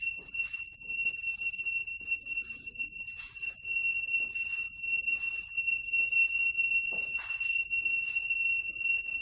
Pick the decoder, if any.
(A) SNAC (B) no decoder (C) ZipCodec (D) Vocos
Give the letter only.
D